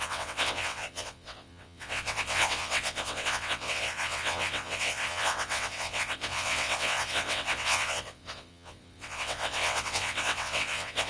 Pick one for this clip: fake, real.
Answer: fake